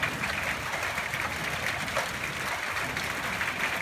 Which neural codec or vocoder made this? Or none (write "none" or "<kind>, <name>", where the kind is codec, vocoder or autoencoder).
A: none